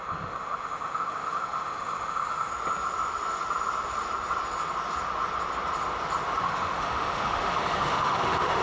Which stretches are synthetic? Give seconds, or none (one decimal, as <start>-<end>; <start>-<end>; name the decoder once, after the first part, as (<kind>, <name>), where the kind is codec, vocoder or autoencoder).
0.0-2.5 (autoencoder, DAC-VAE); 6.4-8.6

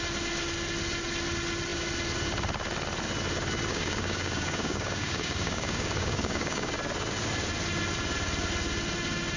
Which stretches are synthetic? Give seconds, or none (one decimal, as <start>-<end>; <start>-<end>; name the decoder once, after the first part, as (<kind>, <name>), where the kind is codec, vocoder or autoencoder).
3.7-6.7 (codec, DAC)

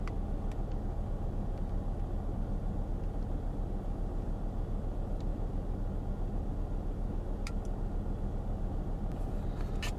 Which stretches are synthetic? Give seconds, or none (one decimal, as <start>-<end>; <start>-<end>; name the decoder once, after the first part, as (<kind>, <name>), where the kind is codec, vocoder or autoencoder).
none